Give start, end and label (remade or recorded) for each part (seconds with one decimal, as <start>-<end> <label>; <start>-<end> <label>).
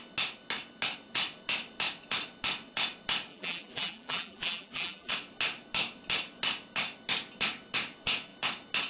0.0-3.3 recorded; 3.3-5.1 remade; 5.1-8.9 recorded